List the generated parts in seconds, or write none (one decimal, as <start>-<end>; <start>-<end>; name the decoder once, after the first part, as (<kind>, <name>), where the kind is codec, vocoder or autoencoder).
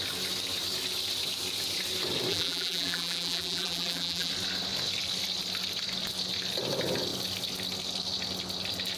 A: 2.3-4.3 (vocoder, BigVGAN v2)